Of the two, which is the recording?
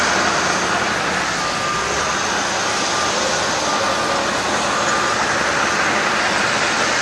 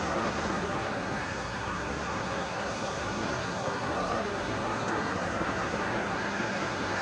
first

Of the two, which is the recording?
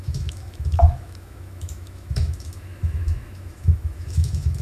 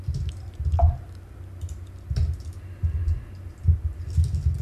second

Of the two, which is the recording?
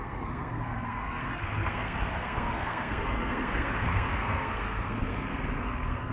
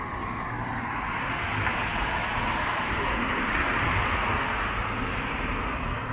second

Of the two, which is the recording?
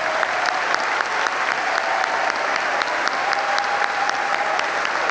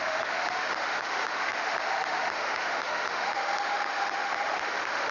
first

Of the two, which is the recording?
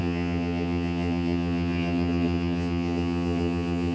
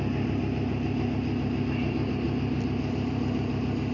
second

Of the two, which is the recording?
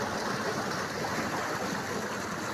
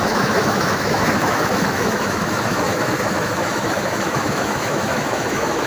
first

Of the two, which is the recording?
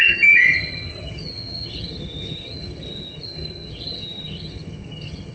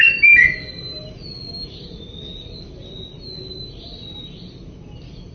second